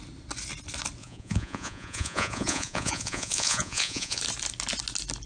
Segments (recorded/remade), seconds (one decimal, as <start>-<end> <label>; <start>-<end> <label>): 0.0-1.0 recorded; 1.0-4.2 remade; 4.2-5.3 recorded